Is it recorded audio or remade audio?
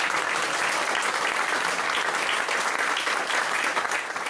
recorded